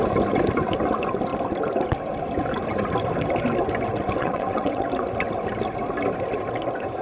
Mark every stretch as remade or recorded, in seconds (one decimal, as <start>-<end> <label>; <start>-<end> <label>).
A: 0.0-4.2 recorded; 4.2-4.9 remade; 4.9-7.0 recorded